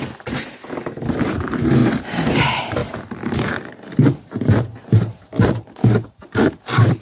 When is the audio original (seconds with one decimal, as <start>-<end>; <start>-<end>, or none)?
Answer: 1.8-2.3; 2.8-3.9